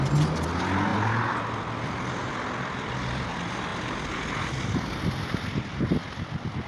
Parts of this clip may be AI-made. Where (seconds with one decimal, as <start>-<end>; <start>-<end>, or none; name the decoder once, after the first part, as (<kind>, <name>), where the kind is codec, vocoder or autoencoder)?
none